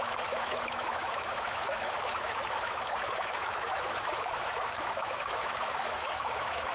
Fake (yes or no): yes